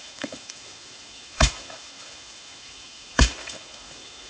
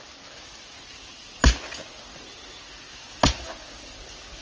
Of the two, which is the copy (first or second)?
first